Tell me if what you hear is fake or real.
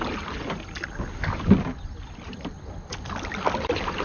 real